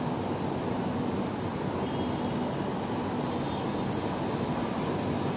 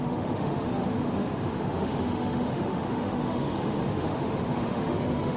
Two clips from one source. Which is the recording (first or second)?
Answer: first